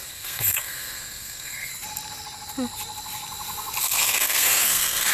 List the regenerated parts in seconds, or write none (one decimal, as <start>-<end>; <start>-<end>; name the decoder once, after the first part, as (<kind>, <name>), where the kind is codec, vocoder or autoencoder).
0.0-1.7 (codec, SNAC); 3.8-5.1